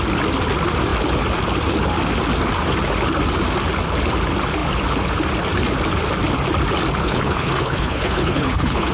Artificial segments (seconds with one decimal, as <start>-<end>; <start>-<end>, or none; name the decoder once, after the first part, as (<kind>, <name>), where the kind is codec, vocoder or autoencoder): 7.0-8.9 (codec, HILCodec)